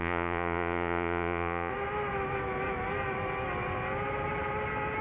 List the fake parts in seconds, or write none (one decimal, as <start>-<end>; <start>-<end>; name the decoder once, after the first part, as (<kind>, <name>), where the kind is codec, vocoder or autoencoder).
0.0-1.7 (vocoder, Vocos)